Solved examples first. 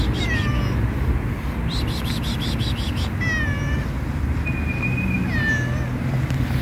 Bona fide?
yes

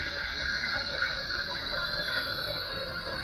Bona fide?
no